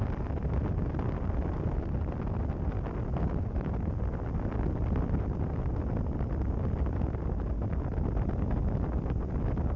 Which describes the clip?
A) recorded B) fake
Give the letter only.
A